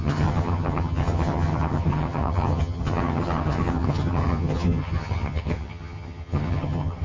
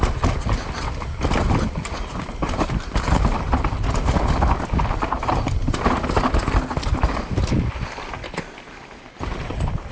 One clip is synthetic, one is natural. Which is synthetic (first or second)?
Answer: first